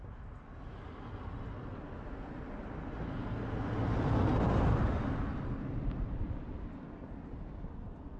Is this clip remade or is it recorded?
recorded